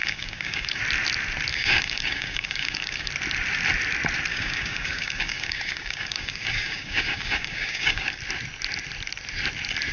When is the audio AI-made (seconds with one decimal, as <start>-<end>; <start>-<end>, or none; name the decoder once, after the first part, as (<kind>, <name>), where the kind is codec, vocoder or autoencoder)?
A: 0.0-0.8 (codec, DAC); 1.5-3.1; 4.3-8.2